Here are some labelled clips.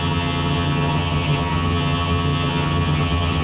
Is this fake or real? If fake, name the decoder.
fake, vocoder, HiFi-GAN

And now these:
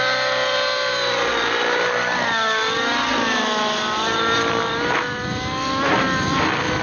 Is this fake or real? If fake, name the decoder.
real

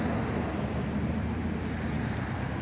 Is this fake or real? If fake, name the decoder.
real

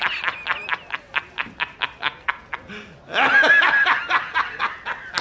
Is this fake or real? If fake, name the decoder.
real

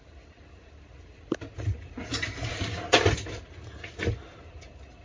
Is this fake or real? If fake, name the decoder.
real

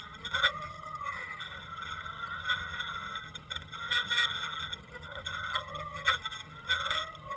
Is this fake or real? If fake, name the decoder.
fake, vocoder, HiFi-GAN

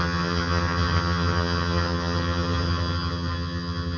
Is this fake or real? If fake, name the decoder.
fake, vocoder, HiFi-GAN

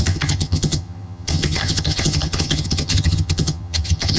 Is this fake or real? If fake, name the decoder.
fake, vocoder, HiFi-GAN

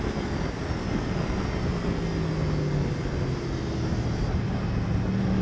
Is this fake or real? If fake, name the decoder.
real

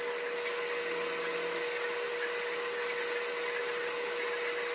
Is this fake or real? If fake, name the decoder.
real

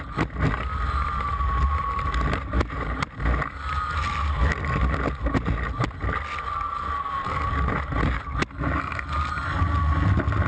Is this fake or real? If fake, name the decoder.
real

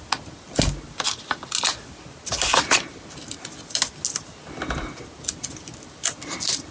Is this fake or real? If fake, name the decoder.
real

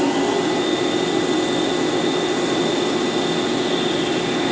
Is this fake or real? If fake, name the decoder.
real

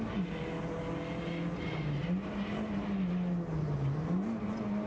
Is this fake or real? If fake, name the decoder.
real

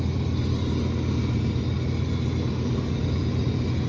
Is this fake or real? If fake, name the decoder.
real